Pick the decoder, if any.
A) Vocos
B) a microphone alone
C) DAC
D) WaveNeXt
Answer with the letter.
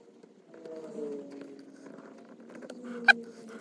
B